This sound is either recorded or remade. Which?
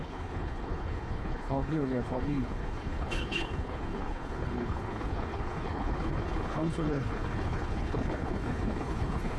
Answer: remade